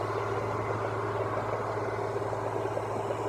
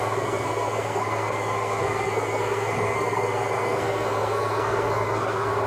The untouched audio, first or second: first